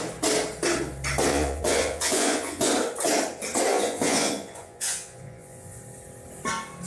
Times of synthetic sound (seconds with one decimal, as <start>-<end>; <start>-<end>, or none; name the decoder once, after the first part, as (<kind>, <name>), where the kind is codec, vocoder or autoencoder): 1.3-2.7 (vocoder, Vocos); 3.7-5.8